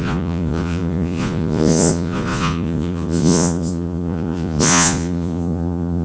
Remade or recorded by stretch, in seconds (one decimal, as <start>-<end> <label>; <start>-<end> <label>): 0.0-6.0 remade